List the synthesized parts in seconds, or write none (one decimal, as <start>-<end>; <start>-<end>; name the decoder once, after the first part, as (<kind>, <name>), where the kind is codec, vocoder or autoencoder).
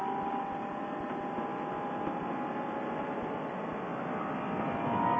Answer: none